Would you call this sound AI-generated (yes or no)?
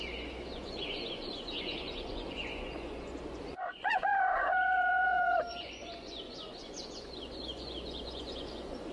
yes